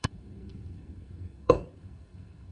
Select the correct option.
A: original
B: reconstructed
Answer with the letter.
B